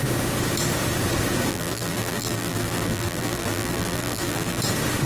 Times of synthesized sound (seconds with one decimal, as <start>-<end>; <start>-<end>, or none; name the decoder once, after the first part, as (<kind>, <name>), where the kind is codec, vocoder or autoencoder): 1.5-4.6 (vocoder, BigVGAN v2)